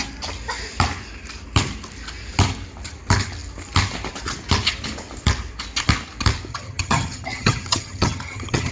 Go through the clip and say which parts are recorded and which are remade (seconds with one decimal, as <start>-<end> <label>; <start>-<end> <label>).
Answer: 0.0-6.5 recorded; 6.5-8.7 remade

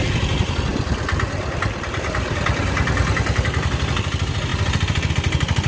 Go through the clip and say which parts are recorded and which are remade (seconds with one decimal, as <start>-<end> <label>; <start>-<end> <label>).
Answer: 0.0-5.7 recorded

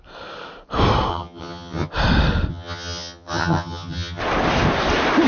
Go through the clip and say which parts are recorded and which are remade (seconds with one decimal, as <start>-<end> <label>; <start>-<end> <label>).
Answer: 0.0-1.1 recorded; 1.1-1.9 remade; 1.9-2.5 recorded; 2.5-4.2 remade; 4.2-5.3 recorded

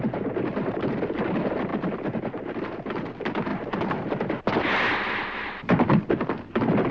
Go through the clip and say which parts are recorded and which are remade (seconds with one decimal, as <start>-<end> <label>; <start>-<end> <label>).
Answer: 0.0-6.9 recorded

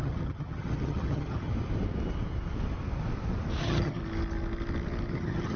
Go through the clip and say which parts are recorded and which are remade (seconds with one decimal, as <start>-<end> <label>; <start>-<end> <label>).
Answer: 0.0-1.5 remade; 1.5-3.6 recorded; 3.6-4.0 remade; 4.0-5.1 recorded; 5.1-5.6 remade

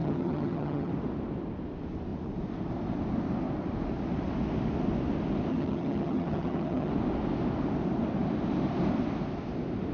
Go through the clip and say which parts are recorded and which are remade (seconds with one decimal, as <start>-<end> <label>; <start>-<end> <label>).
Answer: 0.0-0.9 remade; 0.9-5.5 recorded; 5.5-6.9 remade; 6.9-9.9 recorded